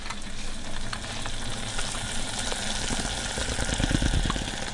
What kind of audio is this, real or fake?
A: real